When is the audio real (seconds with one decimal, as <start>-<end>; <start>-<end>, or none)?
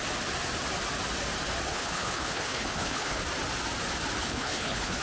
0.0-1.7; 3.2-4.2